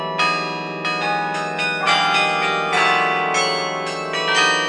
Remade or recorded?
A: recorded